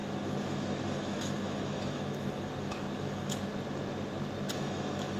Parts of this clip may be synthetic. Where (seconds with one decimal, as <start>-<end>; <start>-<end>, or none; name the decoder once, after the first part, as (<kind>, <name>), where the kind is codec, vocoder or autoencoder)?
0.0-3.5 (autoencoder, DAC-VAE); 4.5-5.2